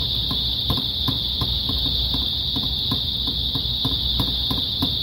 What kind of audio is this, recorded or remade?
recorded